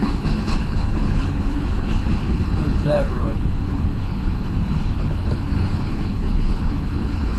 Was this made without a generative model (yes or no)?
no